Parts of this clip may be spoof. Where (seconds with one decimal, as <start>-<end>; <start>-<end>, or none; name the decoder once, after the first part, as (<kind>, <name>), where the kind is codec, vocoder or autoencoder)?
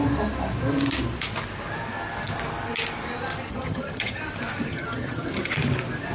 3.5-4.2 (vocoder, HiFi-GAN); 4.7-5.5